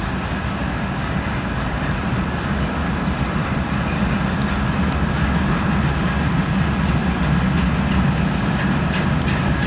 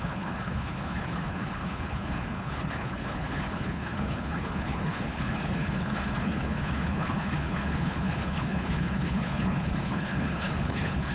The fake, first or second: second